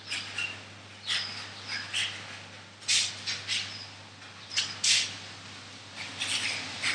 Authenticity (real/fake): real